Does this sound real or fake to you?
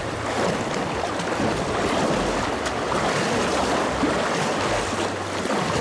real